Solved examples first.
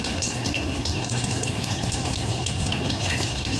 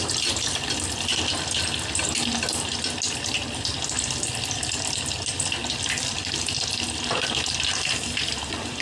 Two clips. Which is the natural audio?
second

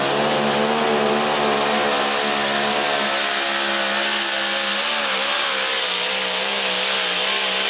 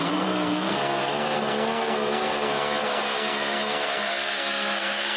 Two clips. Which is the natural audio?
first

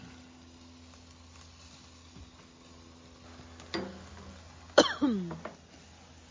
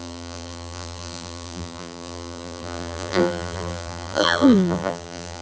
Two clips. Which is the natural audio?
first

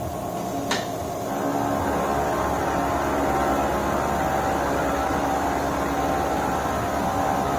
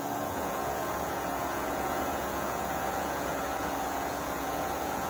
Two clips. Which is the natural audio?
first